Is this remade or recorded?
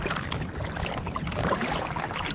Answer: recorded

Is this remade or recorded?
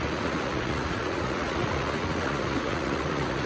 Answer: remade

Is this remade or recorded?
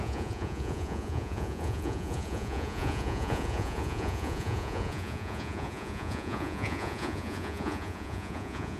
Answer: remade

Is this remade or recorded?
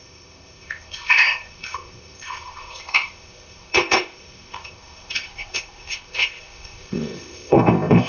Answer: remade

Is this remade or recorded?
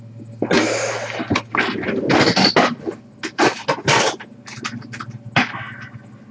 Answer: recorded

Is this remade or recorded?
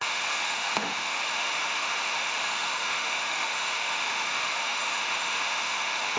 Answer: remade